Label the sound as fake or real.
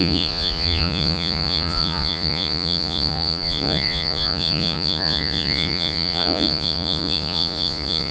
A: fake